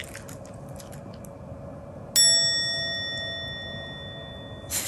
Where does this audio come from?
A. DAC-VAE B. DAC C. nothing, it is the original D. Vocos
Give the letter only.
C